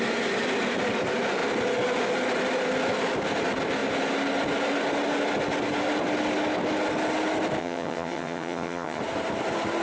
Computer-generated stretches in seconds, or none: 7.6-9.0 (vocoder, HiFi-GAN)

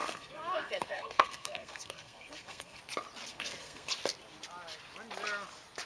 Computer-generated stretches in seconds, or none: 0.0-2.8 (codec, SNAC); 3.3-3.9

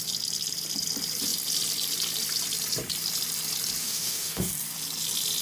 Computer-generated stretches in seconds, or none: 3.8-4.5 (autoencoder, DAC-VAE)

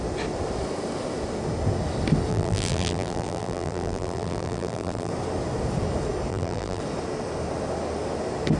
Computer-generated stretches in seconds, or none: 2.3-5.1 (vocoder, BigVGAN v2); 6.3-6.8